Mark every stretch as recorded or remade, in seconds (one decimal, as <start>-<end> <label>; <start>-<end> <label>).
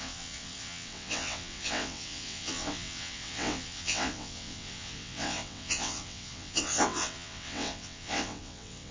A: 0.0-8.9 remade